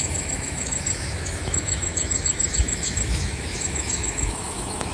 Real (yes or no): no